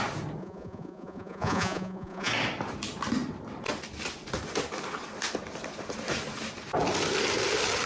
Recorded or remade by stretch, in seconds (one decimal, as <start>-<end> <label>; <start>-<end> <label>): 0.0-0.4 recorded; 0.4-2.3 remade; 2.3-7.9 recorded